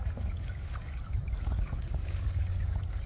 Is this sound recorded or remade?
remade